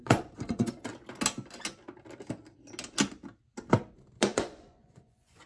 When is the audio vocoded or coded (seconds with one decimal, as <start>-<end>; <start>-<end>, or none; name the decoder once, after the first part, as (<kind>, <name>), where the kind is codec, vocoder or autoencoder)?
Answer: 0.0-0.9 (vocoder, Vocos); 4.2-5.5